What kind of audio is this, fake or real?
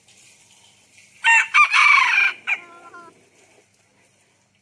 real